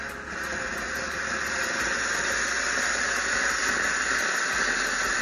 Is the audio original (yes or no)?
yes